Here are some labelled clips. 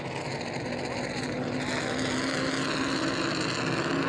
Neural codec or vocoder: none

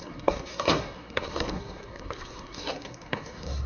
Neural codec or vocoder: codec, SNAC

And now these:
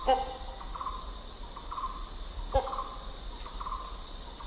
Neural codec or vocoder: none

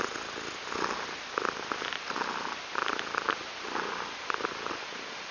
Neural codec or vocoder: none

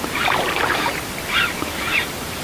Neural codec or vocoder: none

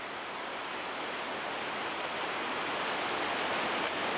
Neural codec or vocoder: none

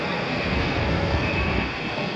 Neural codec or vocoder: codec, SNAC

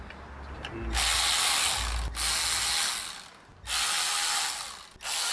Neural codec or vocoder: none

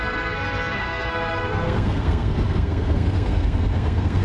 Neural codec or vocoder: codec, SNAC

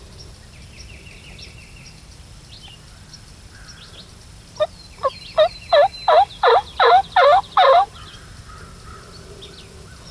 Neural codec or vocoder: none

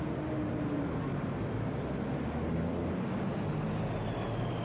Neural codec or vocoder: none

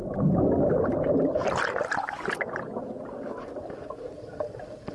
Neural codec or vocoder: none